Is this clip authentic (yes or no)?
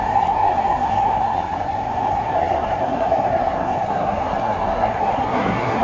no